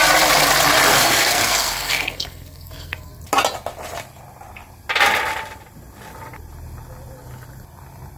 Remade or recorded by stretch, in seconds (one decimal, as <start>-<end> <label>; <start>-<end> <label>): 0.0-0.9 recorded; 0.9-3.1 remade; 3.1-8.2 recorded